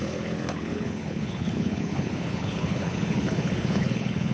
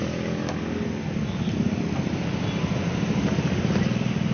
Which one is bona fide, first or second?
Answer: second